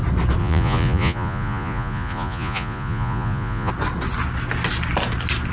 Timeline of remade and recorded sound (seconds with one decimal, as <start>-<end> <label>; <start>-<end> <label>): 0.0-0.4 recorded; 0.4-3.7 remade; 3.7-5.5 recorded